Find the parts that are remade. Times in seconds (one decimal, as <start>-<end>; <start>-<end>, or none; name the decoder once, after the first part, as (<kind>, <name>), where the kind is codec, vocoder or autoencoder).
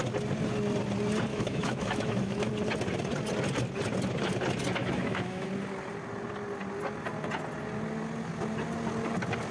1.3-2.5 (autoencoder, DAC-VAE); 4.8-5.5